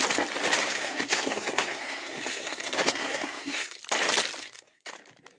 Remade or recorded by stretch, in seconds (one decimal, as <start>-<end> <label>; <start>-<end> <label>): 0.0-0.6 recorded; 0.6-3.8 remade; 3.8-4.4 recorded; 4.4-4.9 remade; 4.9-5.4 recorded